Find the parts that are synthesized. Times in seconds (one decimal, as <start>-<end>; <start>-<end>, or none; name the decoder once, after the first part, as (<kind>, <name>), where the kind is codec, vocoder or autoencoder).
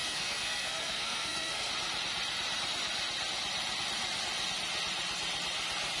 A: 0.0-1.7 (codec, SNAC)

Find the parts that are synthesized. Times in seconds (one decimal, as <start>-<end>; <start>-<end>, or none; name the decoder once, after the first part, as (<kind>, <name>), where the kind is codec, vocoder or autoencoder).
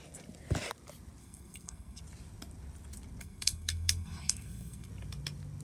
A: 1.2-2.0 (codec, SNAC); 3.2-4.9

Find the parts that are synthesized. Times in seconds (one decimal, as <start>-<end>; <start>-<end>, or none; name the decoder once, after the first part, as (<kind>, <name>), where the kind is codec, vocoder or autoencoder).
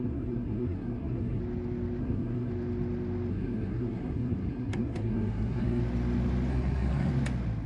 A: 0.0-1.4 (codec, SNAC); 2.0-2.5; 3.3-5.8; 6.5-7.1